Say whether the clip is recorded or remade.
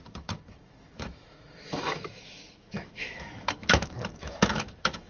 remade